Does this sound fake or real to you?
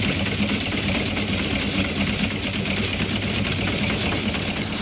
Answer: real